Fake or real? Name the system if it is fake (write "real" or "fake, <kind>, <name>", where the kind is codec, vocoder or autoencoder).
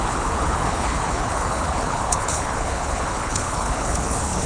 fake, codec, HILCodec